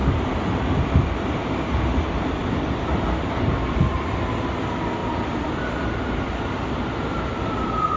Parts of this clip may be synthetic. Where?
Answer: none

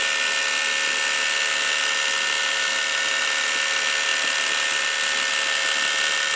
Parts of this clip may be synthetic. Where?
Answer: none

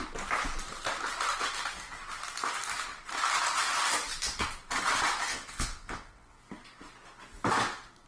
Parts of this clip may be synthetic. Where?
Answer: 5.3-6.4 (vocoder, WaveNeXt)

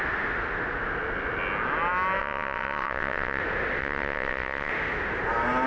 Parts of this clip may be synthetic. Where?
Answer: 2.2-3.4 (vocoder, WaveNeXt); 3.8-4.7

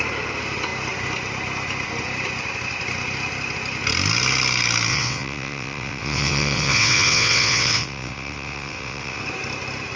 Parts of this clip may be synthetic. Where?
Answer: 4.9-9.2 (vocoder, WaveNeXt)

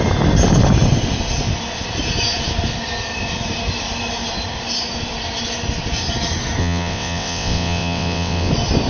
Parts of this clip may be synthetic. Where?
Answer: 6.6-8.5 (vocoder, WaveNeXt)